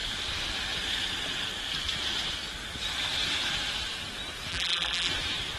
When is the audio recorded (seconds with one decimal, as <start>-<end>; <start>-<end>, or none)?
0.0-4.5; 5.1-5.6